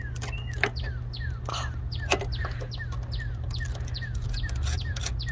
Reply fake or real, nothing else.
real